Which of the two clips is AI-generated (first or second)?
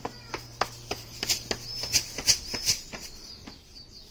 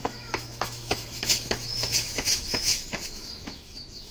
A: second